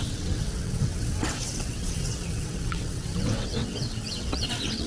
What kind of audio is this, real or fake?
fake